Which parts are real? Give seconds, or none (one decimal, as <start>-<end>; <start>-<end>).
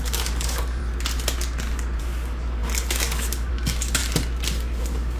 0.8-2.0; 4.0-4.8